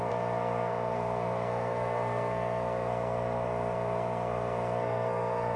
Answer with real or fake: fake